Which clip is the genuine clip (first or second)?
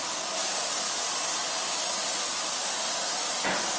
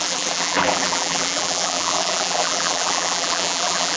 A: first